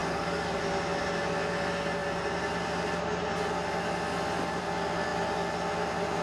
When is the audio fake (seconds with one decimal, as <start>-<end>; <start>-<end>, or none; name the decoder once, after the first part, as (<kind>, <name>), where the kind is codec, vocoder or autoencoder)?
0.0-0.6 (codec, DAC)